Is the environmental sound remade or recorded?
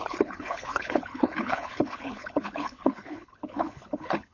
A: remade